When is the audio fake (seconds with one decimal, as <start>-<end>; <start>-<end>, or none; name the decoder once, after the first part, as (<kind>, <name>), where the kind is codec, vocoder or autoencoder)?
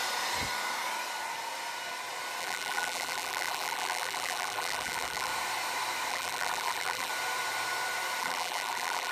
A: 2.4-5.3 (vocoder, BigVGAN v2); 6.1-7.1; 8.2-9.1